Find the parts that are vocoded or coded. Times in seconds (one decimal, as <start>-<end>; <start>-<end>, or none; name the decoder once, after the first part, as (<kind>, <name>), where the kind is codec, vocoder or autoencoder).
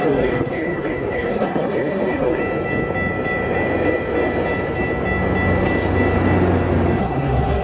0.0-2.4 (codec, SNAC); 7.0-7.6